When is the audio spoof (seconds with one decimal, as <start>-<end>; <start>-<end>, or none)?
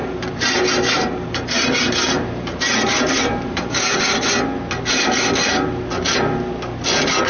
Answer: 0.0-4.3